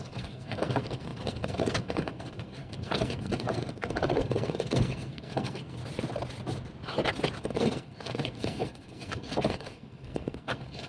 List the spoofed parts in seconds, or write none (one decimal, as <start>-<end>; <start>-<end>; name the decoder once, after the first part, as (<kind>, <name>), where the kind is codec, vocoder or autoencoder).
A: 0.0-5.8 (codec, SNAC); 7.4-10.9

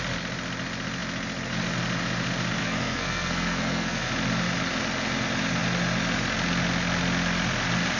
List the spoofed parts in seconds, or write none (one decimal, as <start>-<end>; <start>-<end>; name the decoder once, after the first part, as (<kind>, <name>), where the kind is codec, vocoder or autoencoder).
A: 2.6-4.1 (codec, SNAC)

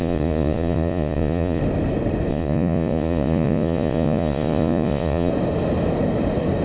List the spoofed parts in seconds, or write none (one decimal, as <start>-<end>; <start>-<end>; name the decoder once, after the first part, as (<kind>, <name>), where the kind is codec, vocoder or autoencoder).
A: 0.0-1.6 (vocoder, Vocos); 2.3-5.3

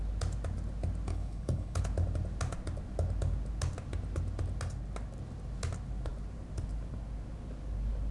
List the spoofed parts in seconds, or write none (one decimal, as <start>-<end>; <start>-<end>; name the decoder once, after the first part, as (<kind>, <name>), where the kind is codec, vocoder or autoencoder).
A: 1.1-1.8 (codec, HILCodec)

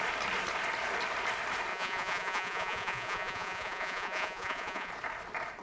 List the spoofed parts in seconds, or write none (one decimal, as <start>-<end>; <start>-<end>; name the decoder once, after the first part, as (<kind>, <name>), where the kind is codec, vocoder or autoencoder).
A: 1.7-4.9 (vocoder, Vocos)